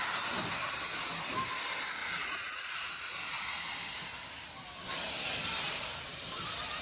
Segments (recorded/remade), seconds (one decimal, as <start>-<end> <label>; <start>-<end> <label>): 0.0-2.0 recorded; 2.0-2.7 remade; 2.7-3.2 recorded; 3.2-3.7 remade; 3.7-6.8 recorded